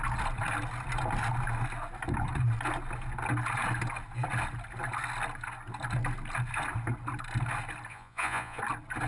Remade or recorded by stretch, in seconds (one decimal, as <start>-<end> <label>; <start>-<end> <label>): 0.0-7.9 recorded; 7.9-8.6 remade; 8.6-9.1 recorded